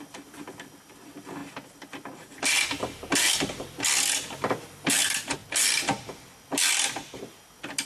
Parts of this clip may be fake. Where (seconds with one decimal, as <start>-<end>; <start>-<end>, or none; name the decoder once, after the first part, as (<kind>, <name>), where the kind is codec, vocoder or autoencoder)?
none